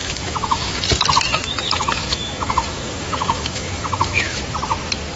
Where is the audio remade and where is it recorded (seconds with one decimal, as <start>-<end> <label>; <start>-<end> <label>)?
0.0-0.8 remade; 0.8-1.3 recorded; 1.3-4.4 remade; 4.4-5.2 recorded